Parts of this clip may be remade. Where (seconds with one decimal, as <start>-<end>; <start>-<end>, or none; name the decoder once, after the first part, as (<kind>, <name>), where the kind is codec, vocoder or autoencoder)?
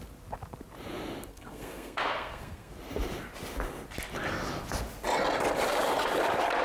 1.3-2.7 (codec, SNAC)